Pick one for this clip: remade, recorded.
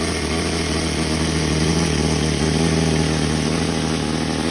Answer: recorded